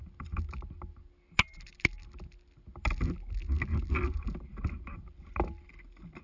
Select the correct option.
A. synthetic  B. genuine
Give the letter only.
B